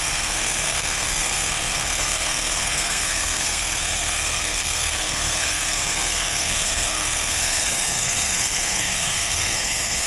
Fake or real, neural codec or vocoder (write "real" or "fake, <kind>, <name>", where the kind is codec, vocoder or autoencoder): fake, codec, SNAC